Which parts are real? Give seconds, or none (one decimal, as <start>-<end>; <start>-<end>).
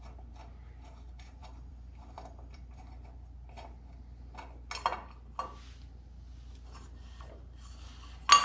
0.0-1.4; 2.8-8.4